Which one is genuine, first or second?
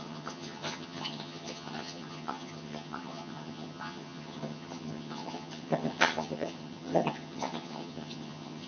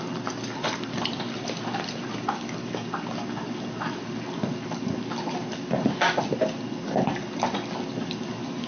second